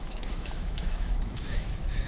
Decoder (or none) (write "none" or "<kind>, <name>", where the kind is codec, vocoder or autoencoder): autoencoder, DAC-VAE